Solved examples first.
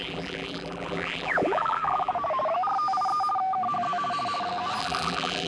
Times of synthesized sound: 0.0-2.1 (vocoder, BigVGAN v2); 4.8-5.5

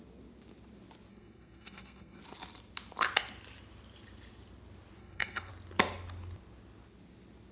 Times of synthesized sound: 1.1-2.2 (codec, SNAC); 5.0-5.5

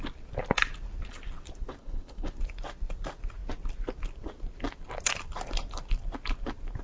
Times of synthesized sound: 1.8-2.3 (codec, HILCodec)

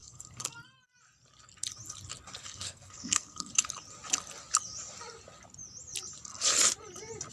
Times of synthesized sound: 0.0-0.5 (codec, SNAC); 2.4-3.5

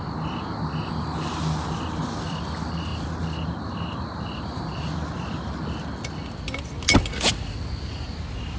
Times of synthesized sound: none

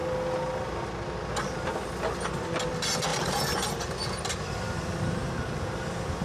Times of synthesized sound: 3.1-5.3 (vocoder, BigVGAN v2)

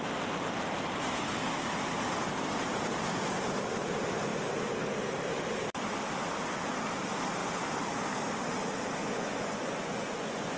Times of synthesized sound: 9.0-10.6 (vocoder, Vocos)